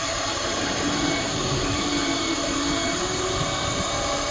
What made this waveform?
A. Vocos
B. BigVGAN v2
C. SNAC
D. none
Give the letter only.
B